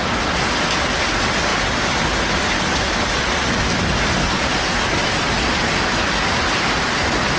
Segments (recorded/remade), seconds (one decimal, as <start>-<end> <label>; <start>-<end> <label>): 0.0-7.4 recorded